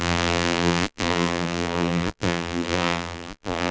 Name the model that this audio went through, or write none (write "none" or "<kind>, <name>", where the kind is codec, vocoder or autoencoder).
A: vocoder, BigVGAN v2